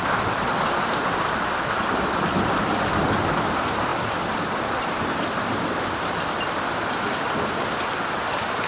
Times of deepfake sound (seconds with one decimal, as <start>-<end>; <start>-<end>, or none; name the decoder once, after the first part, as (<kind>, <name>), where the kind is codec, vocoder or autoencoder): none